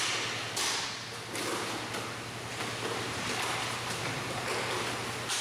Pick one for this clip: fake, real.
real